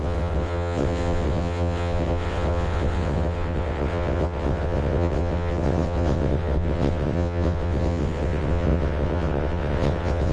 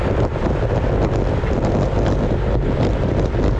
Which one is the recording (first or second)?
second